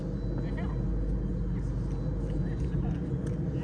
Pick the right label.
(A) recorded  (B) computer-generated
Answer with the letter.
A